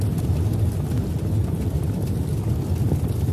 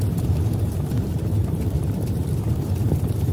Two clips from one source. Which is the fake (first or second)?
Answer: second